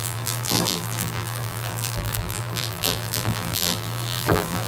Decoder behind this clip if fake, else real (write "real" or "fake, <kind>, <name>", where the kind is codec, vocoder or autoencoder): fake, vocoder, BigVGAN v2